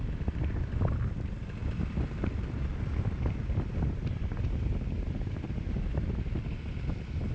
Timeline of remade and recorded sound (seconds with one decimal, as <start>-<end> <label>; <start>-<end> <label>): 0.0-7.3 recorded

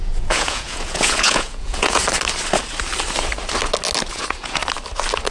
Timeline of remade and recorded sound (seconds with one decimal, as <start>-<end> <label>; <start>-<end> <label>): 0.0-2.0 remade; 2.0-4.1 recorded; 4.1-4.6 remade; 4.6-5.3 recorded